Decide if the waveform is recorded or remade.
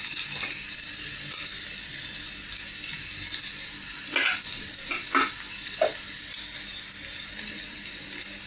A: recorded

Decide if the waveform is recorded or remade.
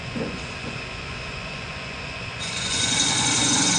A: remade